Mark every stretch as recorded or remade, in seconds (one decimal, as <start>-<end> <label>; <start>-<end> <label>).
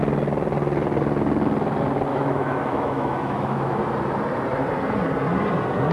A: 0.0-2.1 recorded; 2.1-3.8 remade; 3.8-5.9 recorded